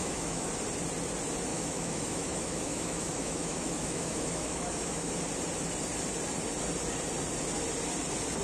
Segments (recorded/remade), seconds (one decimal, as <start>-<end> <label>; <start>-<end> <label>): 0.0-0.5 remade; 0.5-1.5 recorded; 1.5-5.2 remade; 5.2-8.4 recorded